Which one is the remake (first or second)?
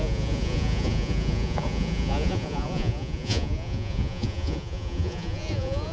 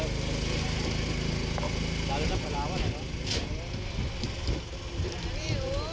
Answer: first